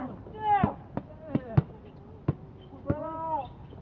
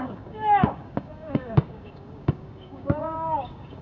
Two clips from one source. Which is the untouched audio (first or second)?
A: first